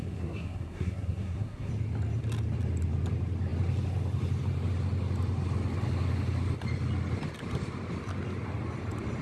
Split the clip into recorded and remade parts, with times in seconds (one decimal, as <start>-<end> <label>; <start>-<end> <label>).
0.0-1.7 remade; 1.7-9.2 recorded